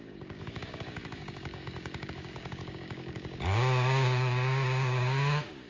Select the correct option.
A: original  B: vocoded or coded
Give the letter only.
B